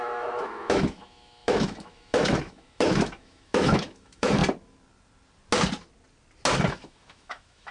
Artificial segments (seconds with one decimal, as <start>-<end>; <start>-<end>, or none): 0.0-4.4; 6.7-7.7